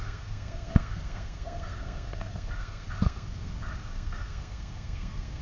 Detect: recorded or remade remade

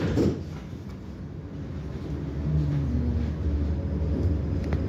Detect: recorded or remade recorded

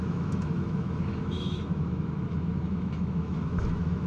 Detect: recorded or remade remade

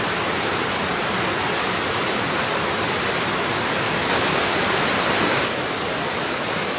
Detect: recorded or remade recorded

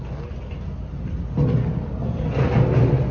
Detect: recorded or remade recorded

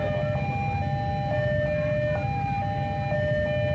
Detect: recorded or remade recorded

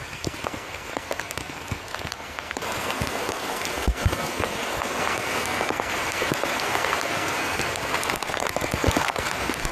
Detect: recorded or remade remade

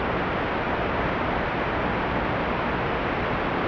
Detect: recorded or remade recorded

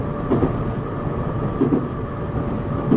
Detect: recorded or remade recorded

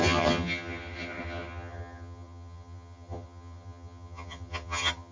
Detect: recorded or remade remade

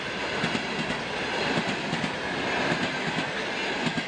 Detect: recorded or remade recorded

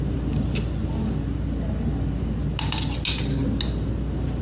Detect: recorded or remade recorded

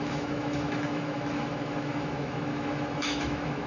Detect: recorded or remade remade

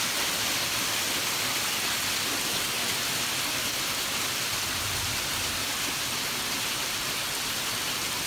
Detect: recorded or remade recorded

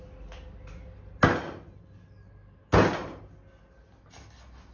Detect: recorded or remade recorded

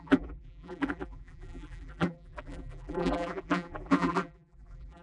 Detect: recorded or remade remade